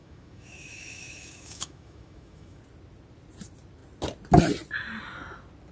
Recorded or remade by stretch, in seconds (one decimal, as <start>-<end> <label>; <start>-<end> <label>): 0.0-2.6 remade; 2.6-5.7 recorded